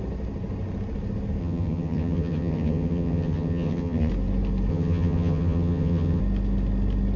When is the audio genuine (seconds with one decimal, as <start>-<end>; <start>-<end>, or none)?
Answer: 0.0-1.4; 4.1-4.7; 6.2-7.2